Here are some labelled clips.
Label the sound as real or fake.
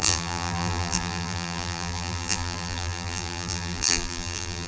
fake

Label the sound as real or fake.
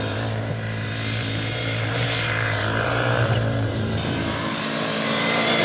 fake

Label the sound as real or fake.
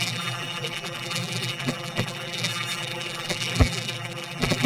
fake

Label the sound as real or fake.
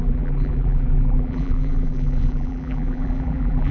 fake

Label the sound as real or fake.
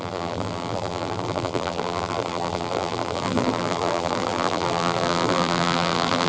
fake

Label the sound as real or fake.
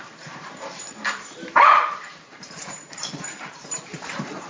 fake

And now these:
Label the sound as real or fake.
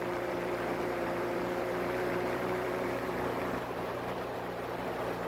fake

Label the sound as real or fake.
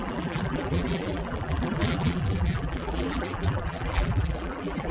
fake